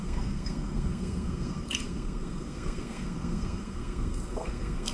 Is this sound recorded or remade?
remade